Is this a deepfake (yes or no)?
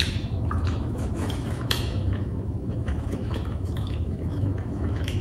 yes